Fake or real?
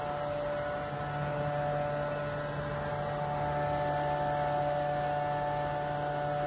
real